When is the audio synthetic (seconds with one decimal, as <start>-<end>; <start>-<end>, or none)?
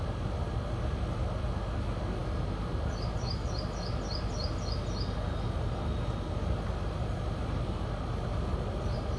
none